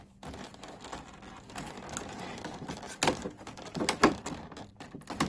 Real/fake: real